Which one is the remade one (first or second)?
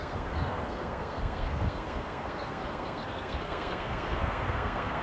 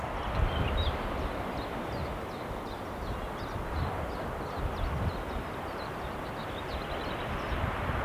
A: first